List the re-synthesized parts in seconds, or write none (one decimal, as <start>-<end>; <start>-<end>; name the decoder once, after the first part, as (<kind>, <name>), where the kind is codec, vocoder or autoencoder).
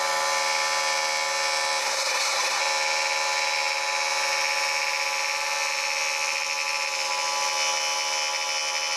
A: 1.8-2.6 (codec, SNAC)